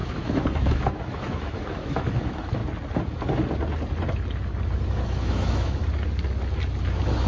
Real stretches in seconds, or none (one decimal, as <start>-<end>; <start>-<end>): 2.6-4.9; 5.8-7.3